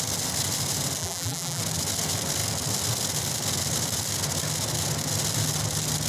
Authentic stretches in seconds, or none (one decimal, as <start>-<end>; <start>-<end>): 0.0-1.0; 1.6-6.1